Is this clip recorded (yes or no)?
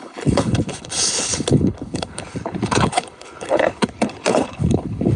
no